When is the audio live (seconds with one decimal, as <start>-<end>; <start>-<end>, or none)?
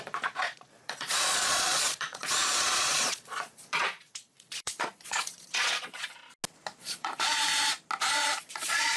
6.2-6.8; 7.5-8.4